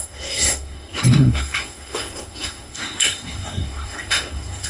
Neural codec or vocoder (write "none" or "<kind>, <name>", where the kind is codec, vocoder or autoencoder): codec, SNAC